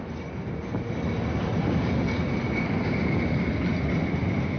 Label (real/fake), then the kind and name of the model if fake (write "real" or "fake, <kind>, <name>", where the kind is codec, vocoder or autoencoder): real